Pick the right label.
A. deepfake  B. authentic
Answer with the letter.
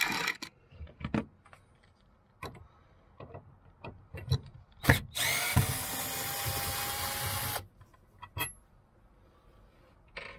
B